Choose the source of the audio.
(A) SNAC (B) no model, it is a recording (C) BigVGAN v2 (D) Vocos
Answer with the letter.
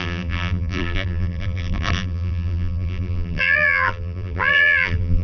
C